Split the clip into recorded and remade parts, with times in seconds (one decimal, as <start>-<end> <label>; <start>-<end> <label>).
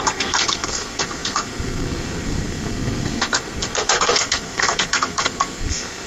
0.0-6.1 remade